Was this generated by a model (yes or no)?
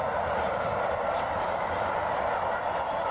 no